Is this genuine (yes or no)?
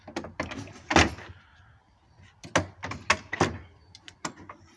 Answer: yes